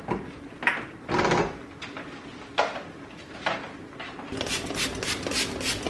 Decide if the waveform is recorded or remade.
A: recorded